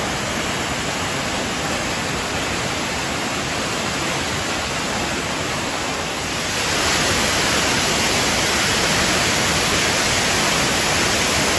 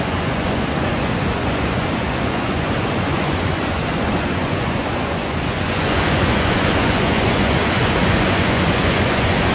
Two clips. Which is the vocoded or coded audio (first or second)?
second